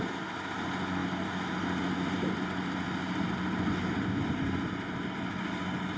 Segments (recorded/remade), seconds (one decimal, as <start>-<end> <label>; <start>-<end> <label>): 0.0-6.0 recorded

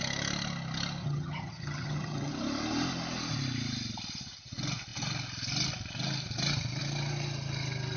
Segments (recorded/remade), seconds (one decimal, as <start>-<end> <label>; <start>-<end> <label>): 0.0-1.0 recorded; 1.0-2.3 remade; 2.3-8.0 recorded

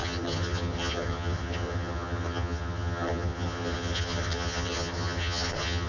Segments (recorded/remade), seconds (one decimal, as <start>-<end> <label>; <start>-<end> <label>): 0.0-5.9 remade

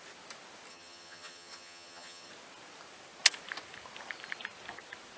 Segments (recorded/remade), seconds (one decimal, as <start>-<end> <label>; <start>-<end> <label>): 0.0-0.7 recorded; 0.7-2.3 remade; 2.3-5.2 recorded

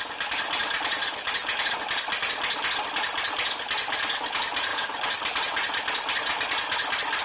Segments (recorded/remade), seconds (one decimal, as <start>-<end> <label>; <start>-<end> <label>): 0.0-7.2 recorded

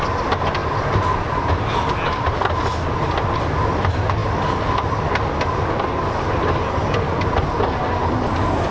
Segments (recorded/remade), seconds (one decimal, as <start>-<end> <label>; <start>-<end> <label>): 0.0-8.7 recorded

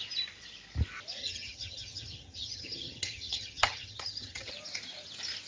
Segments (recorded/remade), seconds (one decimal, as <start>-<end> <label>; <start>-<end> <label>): 0.0-1.2 recorded; 1.2-4.5 remade; 4.5-5.5 recorded

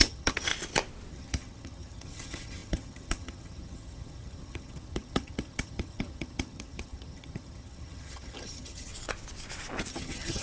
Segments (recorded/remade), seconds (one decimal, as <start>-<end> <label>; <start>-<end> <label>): 0.0-0.5 remade; 0.5-1.1 recorded; 1.1-8.9 remade; 8.9-9.9 recorded; 9.9-10.4 remade